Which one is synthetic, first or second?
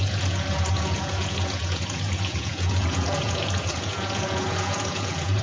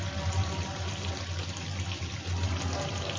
first